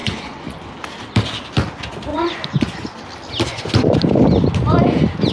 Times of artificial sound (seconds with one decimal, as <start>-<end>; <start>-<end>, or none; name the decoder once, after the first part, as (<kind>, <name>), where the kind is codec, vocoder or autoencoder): 0.0-0.7 (vocoder, Vocos); 2.1-3.0; 3.5-4.0